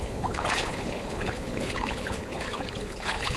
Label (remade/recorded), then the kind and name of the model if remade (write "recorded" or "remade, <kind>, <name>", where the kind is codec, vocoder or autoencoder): remade, codec, HILCodec